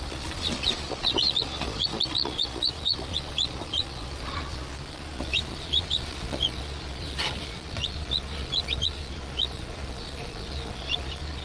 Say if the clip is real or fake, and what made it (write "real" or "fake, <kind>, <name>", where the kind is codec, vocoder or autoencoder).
fake, vocoder, Vocos